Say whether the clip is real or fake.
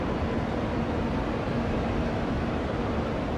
real